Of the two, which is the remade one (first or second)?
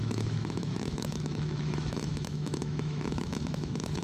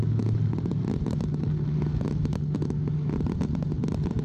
first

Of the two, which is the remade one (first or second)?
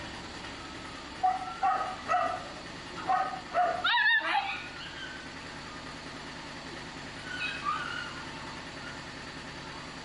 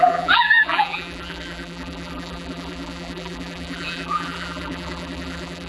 second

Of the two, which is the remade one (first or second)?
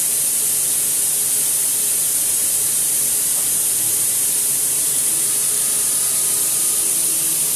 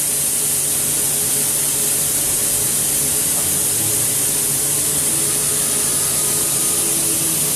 first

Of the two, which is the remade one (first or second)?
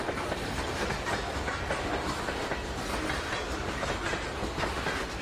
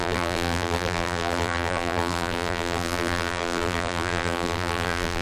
second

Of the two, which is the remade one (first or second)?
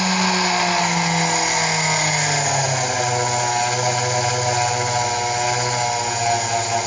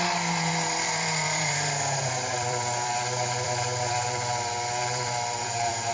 second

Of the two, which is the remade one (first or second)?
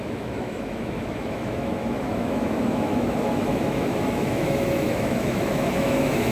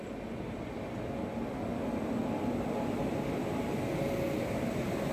first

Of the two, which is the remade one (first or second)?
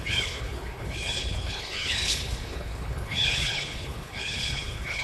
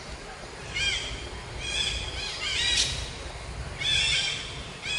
first